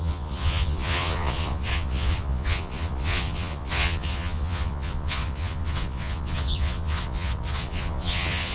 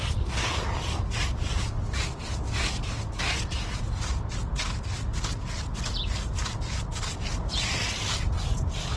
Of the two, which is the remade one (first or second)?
first